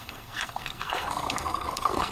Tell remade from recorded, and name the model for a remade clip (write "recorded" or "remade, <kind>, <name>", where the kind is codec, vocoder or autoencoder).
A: remade, codec, SNAC